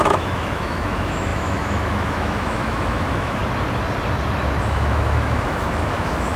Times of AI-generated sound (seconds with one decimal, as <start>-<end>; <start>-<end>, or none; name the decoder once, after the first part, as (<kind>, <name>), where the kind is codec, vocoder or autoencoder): 0.0-3.4 (autoencoder, DAC-VAE); 4.6-6.4